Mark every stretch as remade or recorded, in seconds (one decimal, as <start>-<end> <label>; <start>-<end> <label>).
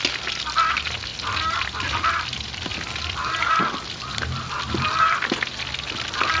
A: 0.0-6.4 recorded